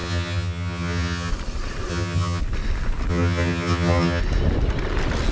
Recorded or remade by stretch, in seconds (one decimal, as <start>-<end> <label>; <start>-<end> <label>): 0.0-1.3 remade; 1.3-1.9 recorded; 1.9-2.4 remade; 2.4-3.1 recorded; 3.1-4.2 remade; 4.2-5.3 recorded